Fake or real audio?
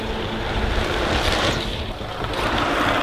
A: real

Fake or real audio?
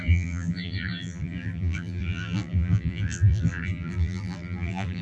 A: fake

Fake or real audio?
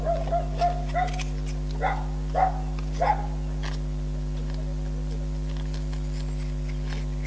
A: real